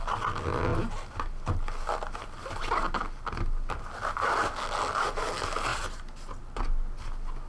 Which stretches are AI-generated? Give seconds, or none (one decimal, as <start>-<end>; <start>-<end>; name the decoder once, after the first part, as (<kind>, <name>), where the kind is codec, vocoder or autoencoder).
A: none